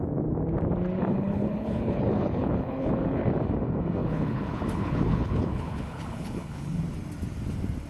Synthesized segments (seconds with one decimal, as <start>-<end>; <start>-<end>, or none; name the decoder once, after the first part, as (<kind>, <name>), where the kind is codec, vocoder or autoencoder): 1.0-3.2 (codec, HILCodec); 4.0-6.8